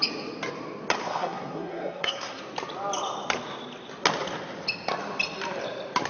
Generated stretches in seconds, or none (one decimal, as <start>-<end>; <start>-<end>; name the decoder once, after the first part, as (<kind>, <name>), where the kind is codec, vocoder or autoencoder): 1.0-2.4 (codec, SNAC)